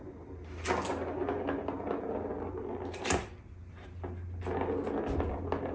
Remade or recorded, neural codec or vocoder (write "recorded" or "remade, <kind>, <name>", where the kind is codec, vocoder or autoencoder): recorded